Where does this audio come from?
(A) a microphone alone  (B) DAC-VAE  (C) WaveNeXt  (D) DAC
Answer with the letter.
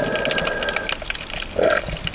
A